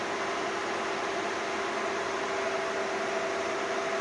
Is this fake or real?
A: fake